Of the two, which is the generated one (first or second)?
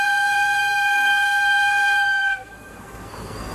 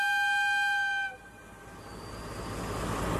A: first